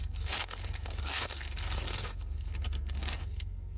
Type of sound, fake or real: fake